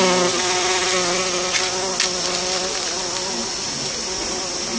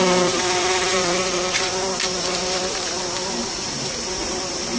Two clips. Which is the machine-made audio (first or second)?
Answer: second